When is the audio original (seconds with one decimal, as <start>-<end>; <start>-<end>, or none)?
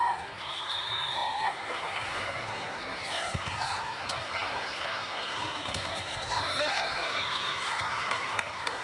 none